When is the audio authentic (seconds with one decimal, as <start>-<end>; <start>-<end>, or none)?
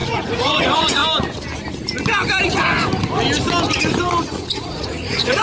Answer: 1.0-4.2